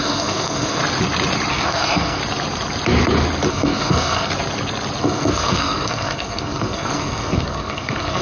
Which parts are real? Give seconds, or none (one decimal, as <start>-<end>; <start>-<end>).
0.8-1.5; 2.2-3.5; 4.3-5.0